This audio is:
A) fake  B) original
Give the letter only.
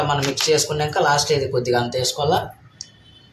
B